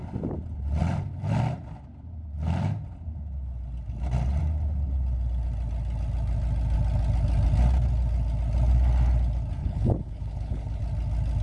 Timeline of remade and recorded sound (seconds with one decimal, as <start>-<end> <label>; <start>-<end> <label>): 0.0-9.6 recorded; 9.6-10.8 remade; 10.8-11.4 recorded